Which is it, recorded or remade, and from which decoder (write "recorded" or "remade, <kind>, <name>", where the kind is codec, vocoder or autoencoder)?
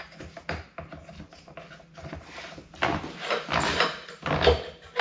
recorded